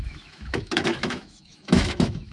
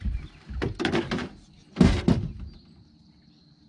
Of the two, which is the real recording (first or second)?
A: second